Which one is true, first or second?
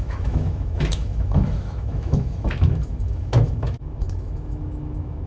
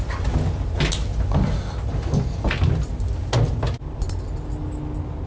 second